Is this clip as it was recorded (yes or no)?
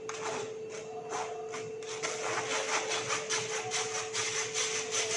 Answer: yes